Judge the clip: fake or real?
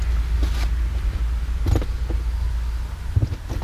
real